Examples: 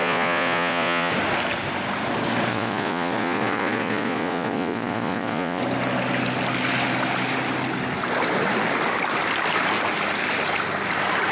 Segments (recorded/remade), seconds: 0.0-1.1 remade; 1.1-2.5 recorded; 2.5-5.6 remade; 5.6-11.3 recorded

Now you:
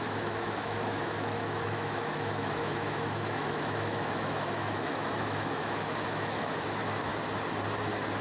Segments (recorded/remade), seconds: 0.0-7.1 remade; 7.1-8.2 recorded

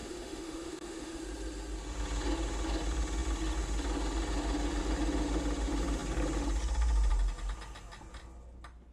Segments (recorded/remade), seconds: 0.0-1.2 remade; 1.2-8.9 recorded